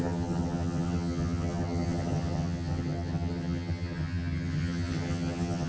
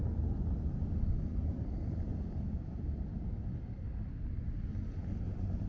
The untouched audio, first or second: second